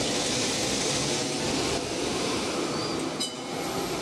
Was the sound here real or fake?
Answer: real